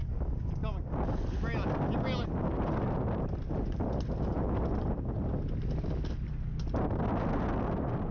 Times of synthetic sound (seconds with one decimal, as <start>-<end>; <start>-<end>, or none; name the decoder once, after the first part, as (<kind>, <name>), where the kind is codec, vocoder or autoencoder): none